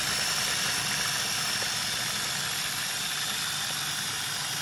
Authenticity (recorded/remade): recorded